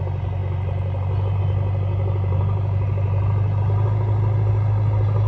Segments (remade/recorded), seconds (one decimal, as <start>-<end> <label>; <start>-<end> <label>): 0.0-5.3 recorded